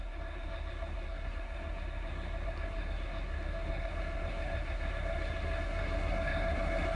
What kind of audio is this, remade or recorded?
remade